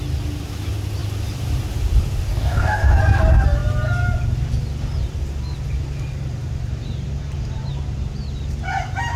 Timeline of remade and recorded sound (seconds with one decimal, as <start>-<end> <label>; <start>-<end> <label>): 0.0-2.3 recorded; 2.3-3.0 remade; 3.0-9.2 recorded